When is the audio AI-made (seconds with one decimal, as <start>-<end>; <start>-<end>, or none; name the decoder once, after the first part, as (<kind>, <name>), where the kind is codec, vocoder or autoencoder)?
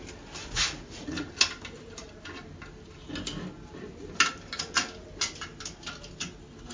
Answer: 0.4-1.3 (vocoder, Vocos)